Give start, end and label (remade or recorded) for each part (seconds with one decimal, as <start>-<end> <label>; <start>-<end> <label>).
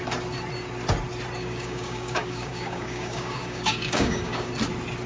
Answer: 0.0-1.4 recorded; 1.4-4.5 remade; 4.5-5.1 recorded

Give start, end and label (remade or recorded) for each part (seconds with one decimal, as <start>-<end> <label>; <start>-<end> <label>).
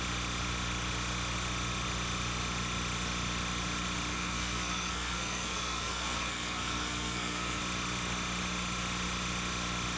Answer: 0.0-4.1 recorded; 4.1-7.6 remade; 7.6-10.0 recorded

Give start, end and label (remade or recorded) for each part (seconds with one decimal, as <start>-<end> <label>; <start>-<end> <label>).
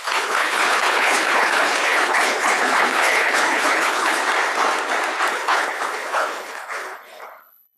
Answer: 0.0-4.2 remade; 4.2-5.3 recorded; 5.3-7.8 remade